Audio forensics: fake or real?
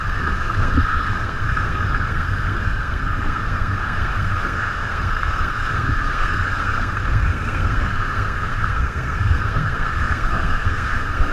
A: fake